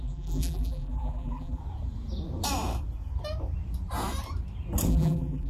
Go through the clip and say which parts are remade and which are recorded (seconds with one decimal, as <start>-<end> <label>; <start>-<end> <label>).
0.0-1.6 remade; 1.6-4.9 recorded; 4.9-5.5 remade